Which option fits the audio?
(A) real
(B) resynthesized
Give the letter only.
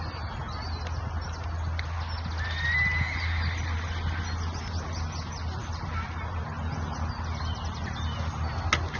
A